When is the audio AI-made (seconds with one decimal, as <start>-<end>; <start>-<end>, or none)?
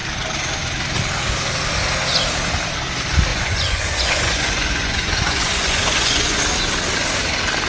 3.3-6.4